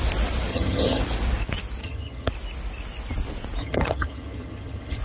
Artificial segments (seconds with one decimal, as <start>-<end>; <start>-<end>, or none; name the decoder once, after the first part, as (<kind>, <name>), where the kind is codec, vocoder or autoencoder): 0.5-1.0 (vocoder, HiFi-GAN); 1.8-2.3; 3.6-5.0